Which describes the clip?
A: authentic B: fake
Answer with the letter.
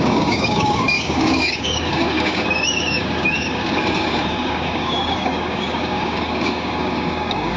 B